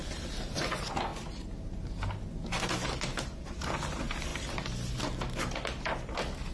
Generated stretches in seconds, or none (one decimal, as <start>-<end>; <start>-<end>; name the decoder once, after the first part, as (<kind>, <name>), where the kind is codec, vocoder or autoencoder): none